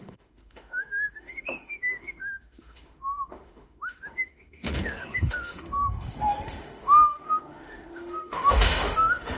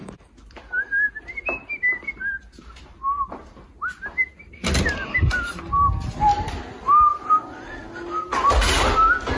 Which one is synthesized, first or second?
first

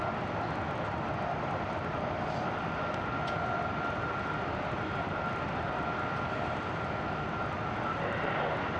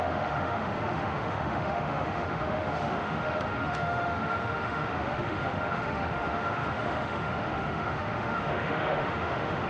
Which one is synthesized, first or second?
second